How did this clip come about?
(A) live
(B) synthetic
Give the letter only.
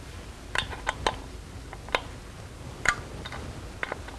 A